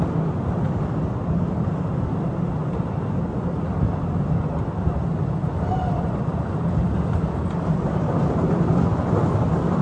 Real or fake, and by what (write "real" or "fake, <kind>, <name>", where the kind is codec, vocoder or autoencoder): real